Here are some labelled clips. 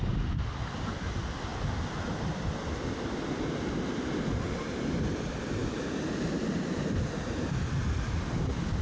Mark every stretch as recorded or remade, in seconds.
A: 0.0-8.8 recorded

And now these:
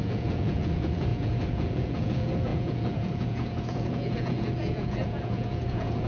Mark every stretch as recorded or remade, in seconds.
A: 0.0-6.1 remade

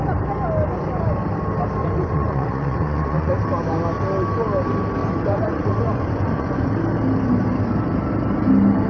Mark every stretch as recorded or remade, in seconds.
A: 0.0-1.8 recorded; 1.8-3.4 remade; 3.4-5.0 recorded; 5.0-6.7 remade; 6.7-8.9 recorded

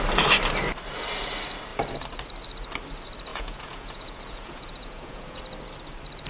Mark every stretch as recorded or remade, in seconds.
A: 0.0-3.3 recorded; 3.3-5.4 remade; 5.4-6.3 recorded

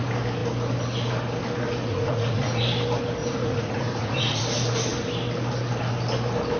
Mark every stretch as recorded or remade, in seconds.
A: 0.0-1.9 recorded; 1.9-2.6 remade; 2.6-3.2 recorded; 3.2-4.4 remade; 4.4-6.6 recorded

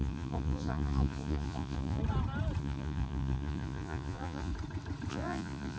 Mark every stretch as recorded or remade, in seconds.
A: 0.0-2.0 remade; 2.0-2.6 recorded; 2.6-4.5 remade; 4.5-5.1 recorded; 5.1-5.8 remade

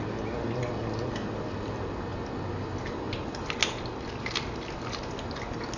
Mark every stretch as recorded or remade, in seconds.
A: 0.0-5.8 recorded

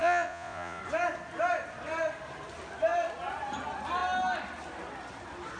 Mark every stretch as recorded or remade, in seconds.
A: 0.0-0.8 remade; 0.8-5.6 recorded